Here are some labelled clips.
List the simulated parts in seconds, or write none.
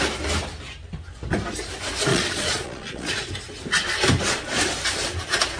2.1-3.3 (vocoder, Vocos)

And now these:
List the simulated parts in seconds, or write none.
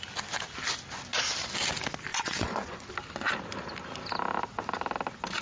2.1-2.9 (vocoder, Vocos)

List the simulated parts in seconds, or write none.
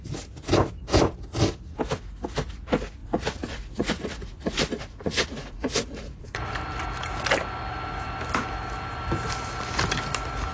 3.0-6.5 (vocoder, Vocos)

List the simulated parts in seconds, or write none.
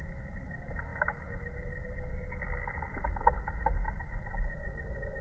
none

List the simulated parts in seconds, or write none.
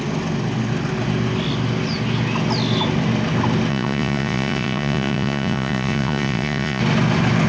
3.7-6.8 (vocoder, Vocos)